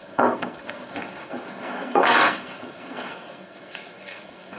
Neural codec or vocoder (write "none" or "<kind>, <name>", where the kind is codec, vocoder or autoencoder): codec, SNAC